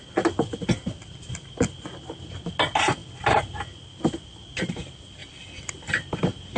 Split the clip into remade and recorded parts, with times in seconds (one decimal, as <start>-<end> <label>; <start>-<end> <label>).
0.0-5.2 recorded; 5.2-6.6 remade